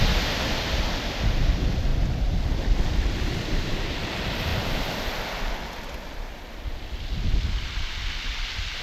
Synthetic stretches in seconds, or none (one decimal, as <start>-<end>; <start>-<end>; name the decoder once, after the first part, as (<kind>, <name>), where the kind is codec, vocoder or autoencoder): none